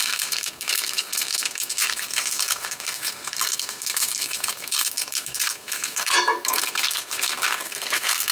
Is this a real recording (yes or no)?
no